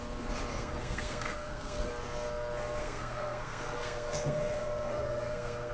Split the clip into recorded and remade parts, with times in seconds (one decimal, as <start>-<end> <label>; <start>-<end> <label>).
0.0-0.5 recorded; 0.5-1.9 remade; 1.9-2.8 recorded; 2.8-5.7 remade